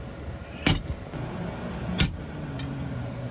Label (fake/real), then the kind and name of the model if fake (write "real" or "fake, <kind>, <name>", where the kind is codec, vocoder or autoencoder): real